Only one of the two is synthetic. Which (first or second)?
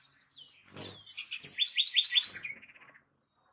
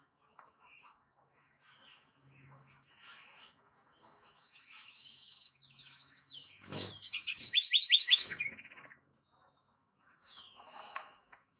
second